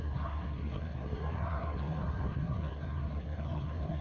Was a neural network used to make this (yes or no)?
yes